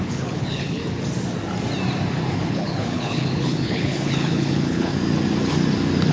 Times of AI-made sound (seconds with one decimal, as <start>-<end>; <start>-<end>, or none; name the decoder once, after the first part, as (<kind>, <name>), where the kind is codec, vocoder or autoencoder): 0.0-0.8 (codec, HILCodec); 2.3-4.9